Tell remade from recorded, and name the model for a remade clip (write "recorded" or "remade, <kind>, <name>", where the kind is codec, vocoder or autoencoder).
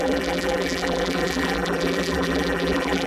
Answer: remade, vocoder, BigVGAN v2